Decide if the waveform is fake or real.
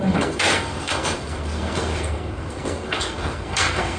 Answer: fake